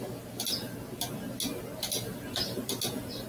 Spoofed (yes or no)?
no